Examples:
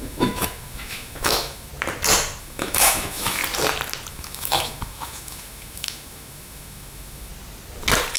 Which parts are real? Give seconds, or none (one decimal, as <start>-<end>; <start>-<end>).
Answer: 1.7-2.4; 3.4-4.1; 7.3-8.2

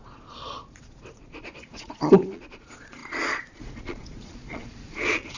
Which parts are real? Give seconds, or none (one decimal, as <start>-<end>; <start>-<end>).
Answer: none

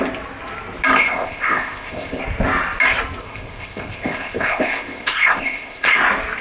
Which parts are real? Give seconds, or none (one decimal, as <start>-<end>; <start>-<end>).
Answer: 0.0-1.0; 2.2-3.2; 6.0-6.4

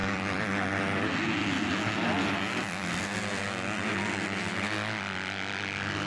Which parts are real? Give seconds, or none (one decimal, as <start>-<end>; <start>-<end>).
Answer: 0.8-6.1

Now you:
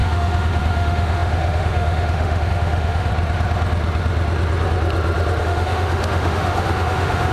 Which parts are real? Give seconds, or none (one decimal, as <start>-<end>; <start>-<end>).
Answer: 3.1-5.4

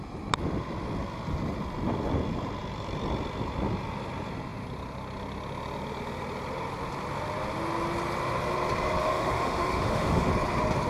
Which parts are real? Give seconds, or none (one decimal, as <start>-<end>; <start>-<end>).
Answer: 0.0-9.0; 10.3-10.9

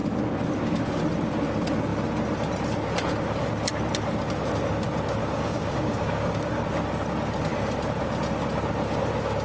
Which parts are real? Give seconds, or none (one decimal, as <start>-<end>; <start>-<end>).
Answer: 0.0-5.2; 6.6-9.4

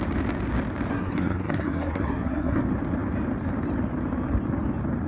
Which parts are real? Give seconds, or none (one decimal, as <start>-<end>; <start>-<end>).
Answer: 0.0-0.9; 2.6-5.1